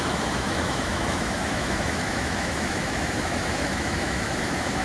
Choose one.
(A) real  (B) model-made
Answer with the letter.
B